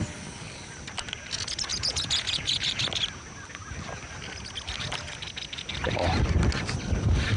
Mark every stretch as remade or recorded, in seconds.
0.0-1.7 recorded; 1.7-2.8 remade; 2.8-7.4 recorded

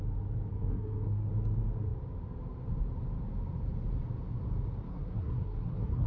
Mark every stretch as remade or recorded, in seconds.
0.0-0.5 recorded; 0.5-1.3 remade; 1.3-4.9 recorded; 4.9-6.1 remade